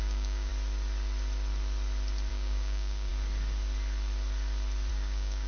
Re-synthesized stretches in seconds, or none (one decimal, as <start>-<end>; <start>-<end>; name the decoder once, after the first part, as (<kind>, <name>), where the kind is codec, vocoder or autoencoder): 0.0-0.5 (codec, DAC); 2.3-3.1; 4.9-5.5